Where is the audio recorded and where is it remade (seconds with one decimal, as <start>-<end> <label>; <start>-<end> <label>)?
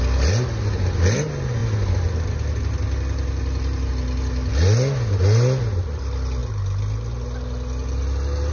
0.0-8.5 recorded